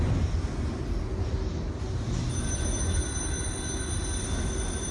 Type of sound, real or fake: real